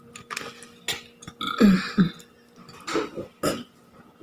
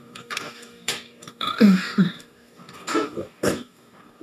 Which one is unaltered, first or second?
first